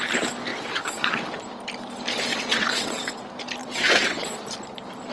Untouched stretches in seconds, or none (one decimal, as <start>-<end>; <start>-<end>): 0.0-0.5; 1.2-2.3; 3.2-3.6; 4.4-5.1